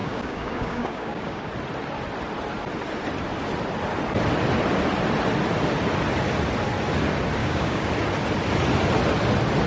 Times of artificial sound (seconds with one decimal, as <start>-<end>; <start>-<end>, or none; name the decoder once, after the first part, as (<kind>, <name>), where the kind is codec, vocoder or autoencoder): 0.0-1.5 (codec, DAC); 7.4-7.9